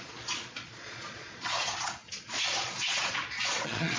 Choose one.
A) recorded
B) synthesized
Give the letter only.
B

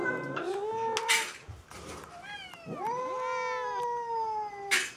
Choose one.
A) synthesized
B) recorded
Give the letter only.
B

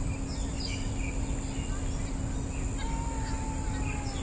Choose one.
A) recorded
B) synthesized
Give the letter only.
A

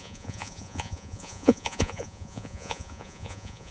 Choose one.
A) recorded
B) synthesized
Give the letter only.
B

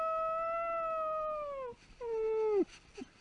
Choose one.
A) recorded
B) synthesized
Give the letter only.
A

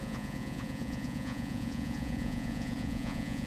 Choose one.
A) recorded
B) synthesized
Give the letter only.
B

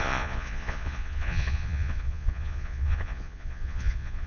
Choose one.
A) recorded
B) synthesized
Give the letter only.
B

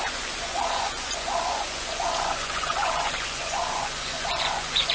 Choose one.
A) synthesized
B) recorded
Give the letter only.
A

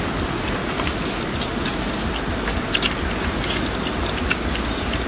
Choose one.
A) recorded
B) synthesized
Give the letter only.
A